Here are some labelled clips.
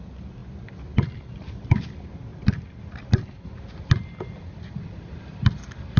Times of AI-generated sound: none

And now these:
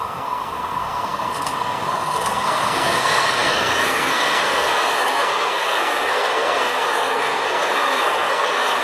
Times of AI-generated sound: 0.0-8.8 (codec, SNAC)

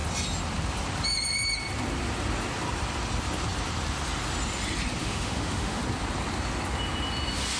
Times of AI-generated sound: 5.0-5.8 (autoencoder, DAC-VAE)

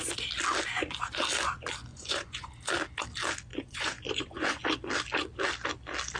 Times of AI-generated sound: 1.9-2.5 (vocoder, Vocos); 3.5-4.6

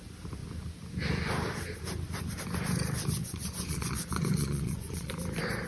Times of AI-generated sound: 3.2-5.1 (vocoder, Vocos)

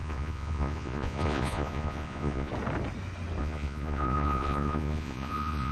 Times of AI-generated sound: 0.0-2.5 (vocoder, Vocos); 3.4-5.7